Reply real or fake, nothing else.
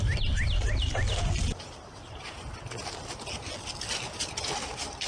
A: real